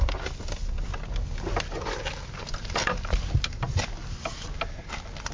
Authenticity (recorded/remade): recorded